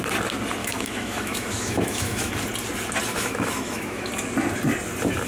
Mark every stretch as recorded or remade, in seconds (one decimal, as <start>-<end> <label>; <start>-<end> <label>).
0.0-0.6 recorded; 0.6-2.3 remade; 2.3-3.1 recorded; 3.1-4.1 remade; 4.1-5.3 recorded